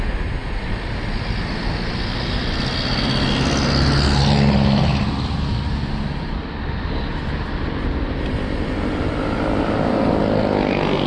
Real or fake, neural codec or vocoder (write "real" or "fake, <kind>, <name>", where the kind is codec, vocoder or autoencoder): real